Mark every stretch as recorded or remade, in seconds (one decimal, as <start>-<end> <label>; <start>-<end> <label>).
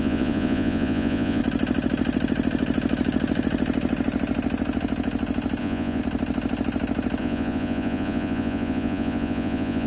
0.0-1.4 remade; 1.4-5.6 recorded; 5.6-6.0 remade; 6.0-7.2 recorded; 7.2-9.9 remade